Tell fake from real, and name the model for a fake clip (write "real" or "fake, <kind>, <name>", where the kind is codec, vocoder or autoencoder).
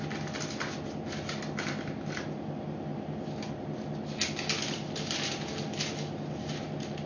real